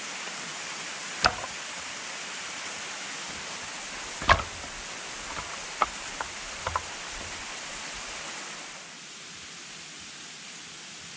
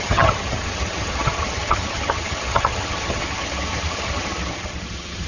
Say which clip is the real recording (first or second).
first